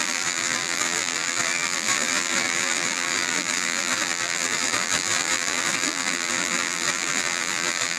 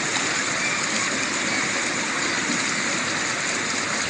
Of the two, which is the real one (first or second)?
second